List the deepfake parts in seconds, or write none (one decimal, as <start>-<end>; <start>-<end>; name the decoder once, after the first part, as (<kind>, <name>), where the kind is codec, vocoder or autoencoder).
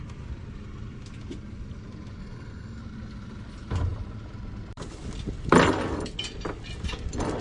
2.2-2.8 (codec, SNAC)